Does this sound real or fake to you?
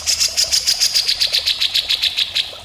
real